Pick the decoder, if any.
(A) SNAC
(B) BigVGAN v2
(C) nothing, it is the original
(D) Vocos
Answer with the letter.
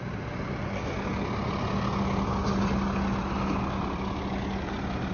C